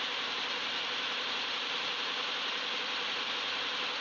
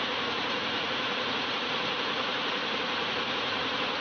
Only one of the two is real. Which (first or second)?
first